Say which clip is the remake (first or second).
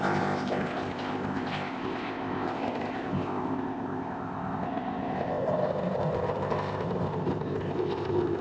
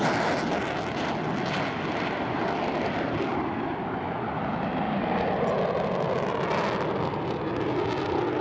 first